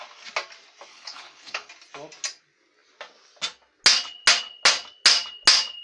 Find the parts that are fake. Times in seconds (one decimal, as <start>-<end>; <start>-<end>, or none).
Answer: 0.9-1.7